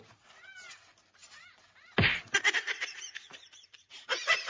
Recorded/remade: remade